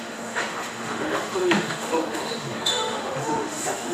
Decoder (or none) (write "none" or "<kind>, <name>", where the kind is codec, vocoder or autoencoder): autoencoder, DAC-VAE